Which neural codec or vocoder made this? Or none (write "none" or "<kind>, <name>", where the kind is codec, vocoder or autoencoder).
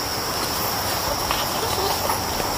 none